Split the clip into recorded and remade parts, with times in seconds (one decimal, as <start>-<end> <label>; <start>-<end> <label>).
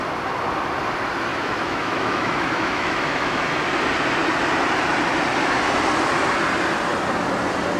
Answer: 0.0-1.3 recorded; 1.3-3.4 remade; 3.4-7.8 recorded